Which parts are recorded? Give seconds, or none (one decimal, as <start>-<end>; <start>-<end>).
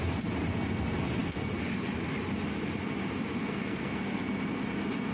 0.0-3.4; 4.3-5.1